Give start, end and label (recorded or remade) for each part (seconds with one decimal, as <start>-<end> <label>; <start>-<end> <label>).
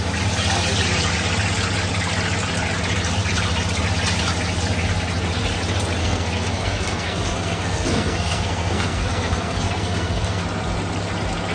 0.0-6.0 recorded; 6.0-10.4 remade; 10.4-11.5 recorded